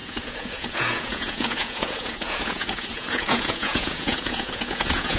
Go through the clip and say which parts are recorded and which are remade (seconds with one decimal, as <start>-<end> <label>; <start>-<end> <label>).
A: 0.0-5.2 remade